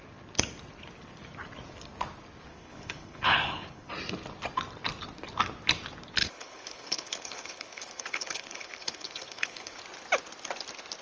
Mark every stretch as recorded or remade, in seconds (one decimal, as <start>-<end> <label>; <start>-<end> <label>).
0.0-2.5 recorded; 2.5-3.9 remade; 3.9-6.2 recorded; 6.2-9.8 remade; 9.8-11.0 recorded